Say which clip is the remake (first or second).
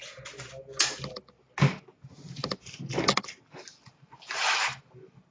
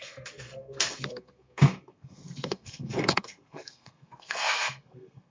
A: second